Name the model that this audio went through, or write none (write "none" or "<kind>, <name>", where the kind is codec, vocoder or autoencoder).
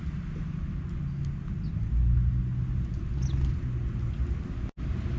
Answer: none